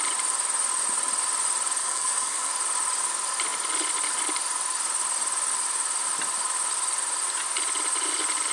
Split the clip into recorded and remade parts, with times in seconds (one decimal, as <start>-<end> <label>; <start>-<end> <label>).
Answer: 0.0-1.8 recorded; 1.8-2.5 remade; 2.5-8.5 recorded